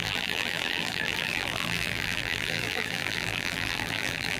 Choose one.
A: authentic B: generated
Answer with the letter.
B